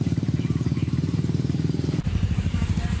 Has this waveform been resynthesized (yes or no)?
yes